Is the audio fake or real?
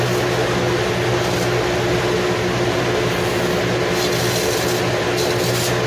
real